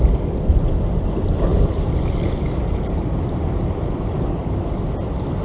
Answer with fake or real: real